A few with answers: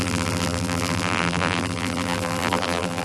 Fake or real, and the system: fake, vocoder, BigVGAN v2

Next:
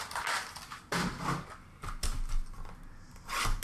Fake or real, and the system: real